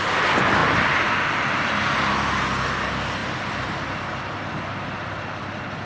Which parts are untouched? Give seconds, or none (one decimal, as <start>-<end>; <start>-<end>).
0.0-0.6; 1.7-3.2; 4.3-5.8